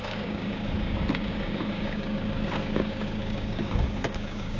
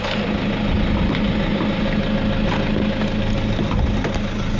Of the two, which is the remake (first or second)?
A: first